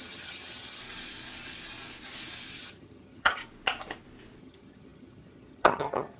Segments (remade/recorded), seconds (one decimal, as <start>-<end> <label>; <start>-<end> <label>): 0.0-0.8 remade; 0.8-2.6 recorded; 2.6-3.4 remade; 3.4-4.4 recorded; 4.4-6.2 remade